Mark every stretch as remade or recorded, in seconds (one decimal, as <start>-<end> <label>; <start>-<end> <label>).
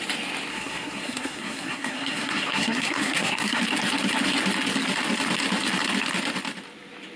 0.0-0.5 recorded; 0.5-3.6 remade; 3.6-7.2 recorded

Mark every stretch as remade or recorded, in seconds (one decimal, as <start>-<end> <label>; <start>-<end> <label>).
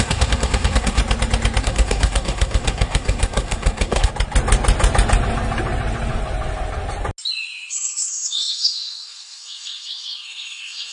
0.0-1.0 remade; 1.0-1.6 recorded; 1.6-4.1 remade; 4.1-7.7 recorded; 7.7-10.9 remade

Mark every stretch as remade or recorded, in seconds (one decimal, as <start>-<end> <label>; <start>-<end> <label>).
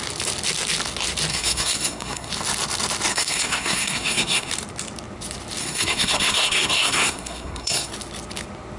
0.0-1.3 recorded; 1.3-2.3 remade; 2.3-3.1 recorded; 3.1-4.5 remade; 4.5-5.6 recorded; 5.6-7.9 remade; 7.9-8.8 recorded